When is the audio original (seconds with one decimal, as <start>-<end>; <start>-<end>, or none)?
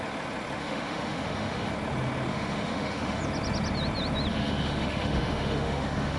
0.0-0.6; 1.7-2.3; 3.2-4.3